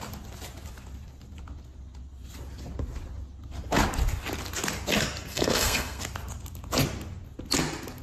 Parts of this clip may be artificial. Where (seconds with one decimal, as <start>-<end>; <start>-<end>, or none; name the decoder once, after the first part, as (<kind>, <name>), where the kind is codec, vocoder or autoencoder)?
5.3-6.0 (codec, SNAC)